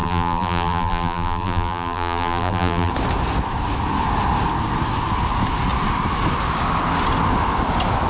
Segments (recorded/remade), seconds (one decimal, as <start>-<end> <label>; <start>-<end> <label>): 0.0-2.9 remade; 2.9-8.1 recorded